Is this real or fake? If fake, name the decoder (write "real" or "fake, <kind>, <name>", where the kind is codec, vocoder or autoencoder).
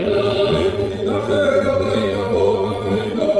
fake, vocoder, Vocos